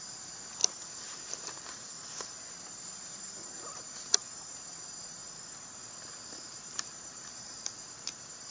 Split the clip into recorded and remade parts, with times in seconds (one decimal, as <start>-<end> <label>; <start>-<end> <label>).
0.0-0.6 remade; 0.6-2.6 recorded; 2.6-5.2 remade; 5.2-6.3 recorded; 6.3-8.5 remade